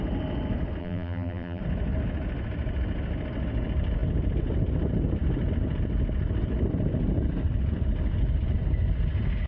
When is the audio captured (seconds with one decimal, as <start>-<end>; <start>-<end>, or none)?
0.0-0.8; 1.6-9.5